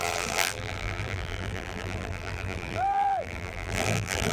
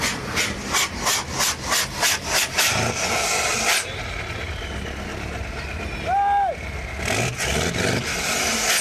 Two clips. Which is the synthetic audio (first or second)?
first